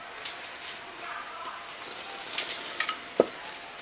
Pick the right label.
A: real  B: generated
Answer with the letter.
A